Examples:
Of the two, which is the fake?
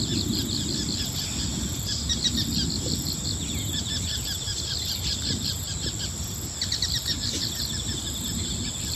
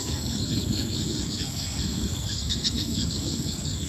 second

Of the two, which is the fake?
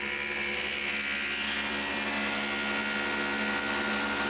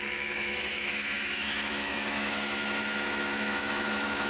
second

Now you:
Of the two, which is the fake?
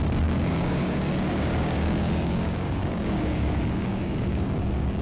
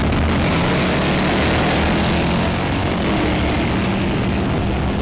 first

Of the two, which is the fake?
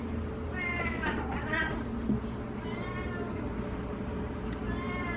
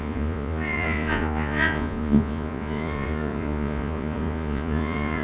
second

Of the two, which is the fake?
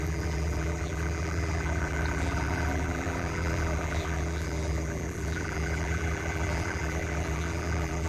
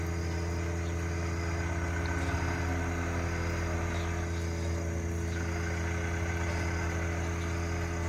first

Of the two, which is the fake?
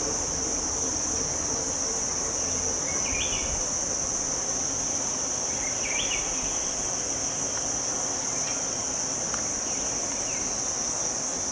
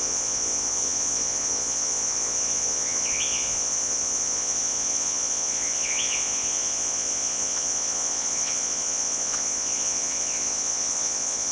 second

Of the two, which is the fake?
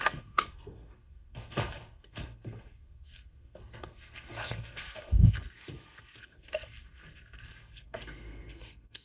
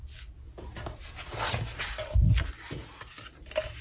first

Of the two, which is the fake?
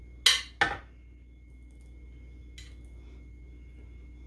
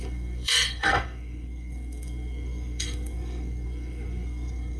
second